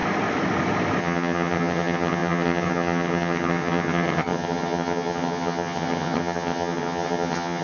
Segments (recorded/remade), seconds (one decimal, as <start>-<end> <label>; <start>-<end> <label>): 0.0-1.0 recorded; 1.0-7.6 remade

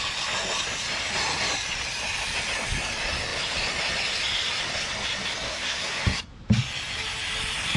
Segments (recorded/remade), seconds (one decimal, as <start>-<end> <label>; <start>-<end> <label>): 0.0-5.5 recorded; 5.5-6.3 remade; 6.3-7.8 recorded

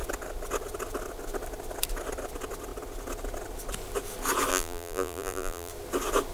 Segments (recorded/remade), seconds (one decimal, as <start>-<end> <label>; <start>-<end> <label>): 0.0-4.5 recorded; 4.5-5.7 remade; 5.7-6.3 recorded

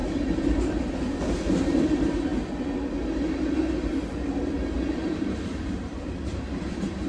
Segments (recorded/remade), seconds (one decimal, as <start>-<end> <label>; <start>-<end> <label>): 0.0-2.3 remade; 2.3-4.9 recorded; 4.9-7.1 remade